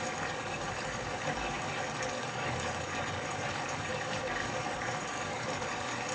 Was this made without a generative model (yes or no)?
no